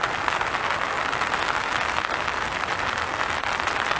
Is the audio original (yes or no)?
yes